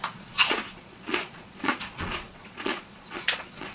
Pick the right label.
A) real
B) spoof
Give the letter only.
B